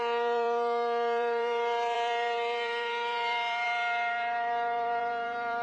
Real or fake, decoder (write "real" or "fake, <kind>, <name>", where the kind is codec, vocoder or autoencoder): fake, vocoder, BigVGAN v2